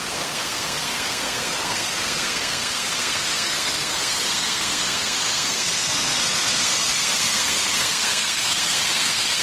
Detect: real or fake fake